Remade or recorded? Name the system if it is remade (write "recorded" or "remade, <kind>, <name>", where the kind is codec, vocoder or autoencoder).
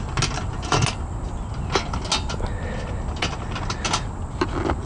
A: recorded